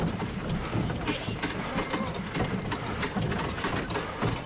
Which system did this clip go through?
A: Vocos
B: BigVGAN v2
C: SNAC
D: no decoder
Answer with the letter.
B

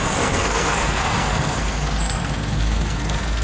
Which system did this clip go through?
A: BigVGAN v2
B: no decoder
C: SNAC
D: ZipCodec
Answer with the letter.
C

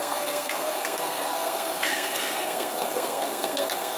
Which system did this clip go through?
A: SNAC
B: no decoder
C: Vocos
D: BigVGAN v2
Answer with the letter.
A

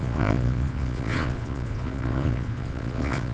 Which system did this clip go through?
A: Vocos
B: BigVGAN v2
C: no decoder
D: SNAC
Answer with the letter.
A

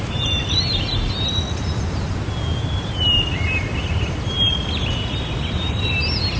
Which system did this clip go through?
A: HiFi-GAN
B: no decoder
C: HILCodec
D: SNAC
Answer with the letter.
B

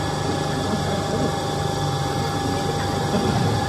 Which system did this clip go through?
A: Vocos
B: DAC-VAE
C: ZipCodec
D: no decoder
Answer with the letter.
D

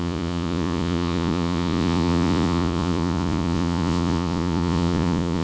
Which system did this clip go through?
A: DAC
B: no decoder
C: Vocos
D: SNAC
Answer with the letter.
C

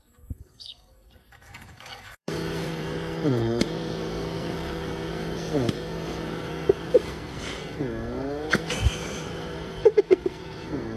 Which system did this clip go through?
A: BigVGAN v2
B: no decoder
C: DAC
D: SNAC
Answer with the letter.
D